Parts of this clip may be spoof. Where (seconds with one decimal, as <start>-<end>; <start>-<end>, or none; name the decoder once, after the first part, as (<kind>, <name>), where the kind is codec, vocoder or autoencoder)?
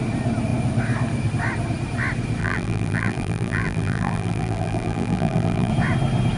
2.4-5.7 (vocoder, BigVGAN v2)